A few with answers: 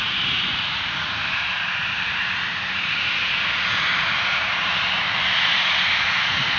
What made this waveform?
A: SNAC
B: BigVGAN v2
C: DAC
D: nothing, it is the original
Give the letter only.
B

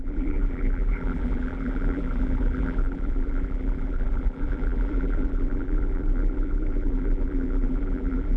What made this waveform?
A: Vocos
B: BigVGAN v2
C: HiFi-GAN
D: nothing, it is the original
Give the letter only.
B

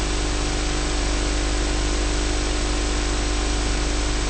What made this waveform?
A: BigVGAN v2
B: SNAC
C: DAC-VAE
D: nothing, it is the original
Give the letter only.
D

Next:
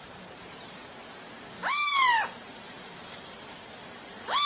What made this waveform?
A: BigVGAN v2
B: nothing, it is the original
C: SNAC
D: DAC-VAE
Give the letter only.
A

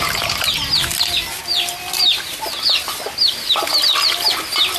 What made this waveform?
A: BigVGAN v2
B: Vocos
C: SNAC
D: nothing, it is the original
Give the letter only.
D